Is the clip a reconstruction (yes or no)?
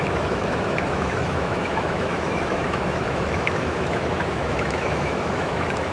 yes